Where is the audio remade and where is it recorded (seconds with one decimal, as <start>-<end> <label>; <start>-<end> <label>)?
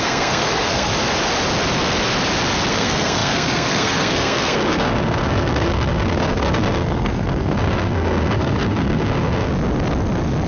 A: 0.0-0.9 remade; 0.9-2.7 recorded; 2.7-9.5 remade; 9.5-10.5 recorded